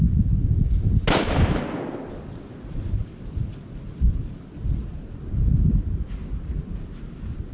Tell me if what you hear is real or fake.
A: real